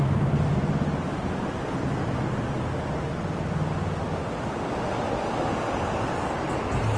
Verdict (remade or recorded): recorded